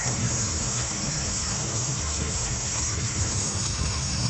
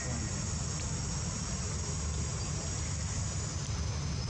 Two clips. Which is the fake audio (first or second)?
first